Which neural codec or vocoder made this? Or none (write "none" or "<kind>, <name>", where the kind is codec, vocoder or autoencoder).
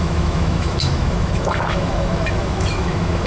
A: autoencoder, DAC-VAE